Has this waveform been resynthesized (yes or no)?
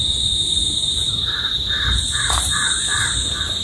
yes